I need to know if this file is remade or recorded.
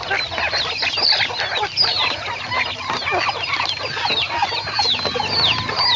recorded